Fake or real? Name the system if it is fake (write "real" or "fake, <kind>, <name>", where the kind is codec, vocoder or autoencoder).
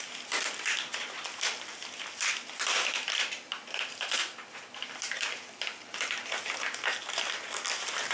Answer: real